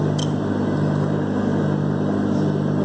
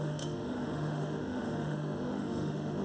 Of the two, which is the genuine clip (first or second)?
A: first